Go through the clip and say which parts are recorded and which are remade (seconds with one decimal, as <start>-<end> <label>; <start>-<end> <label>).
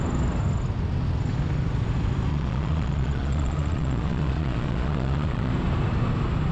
0.0-2.3 recorded; 2.3-5.5 remade; 5.5-6.5 recorded